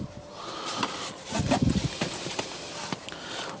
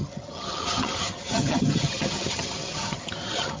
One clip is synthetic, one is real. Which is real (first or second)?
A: first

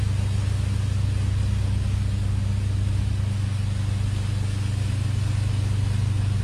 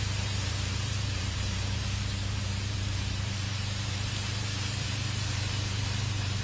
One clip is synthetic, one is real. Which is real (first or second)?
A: first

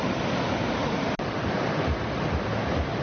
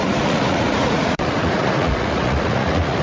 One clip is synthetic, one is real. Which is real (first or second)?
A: first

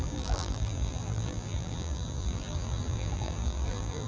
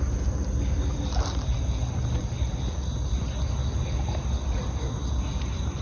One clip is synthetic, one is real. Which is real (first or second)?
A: second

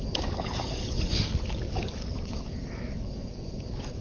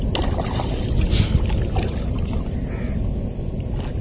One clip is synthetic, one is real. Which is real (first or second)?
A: second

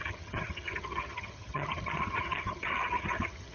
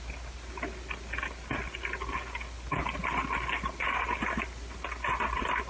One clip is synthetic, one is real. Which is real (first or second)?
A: second